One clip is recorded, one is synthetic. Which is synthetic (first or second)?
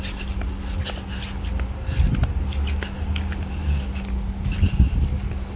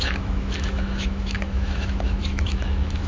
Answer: second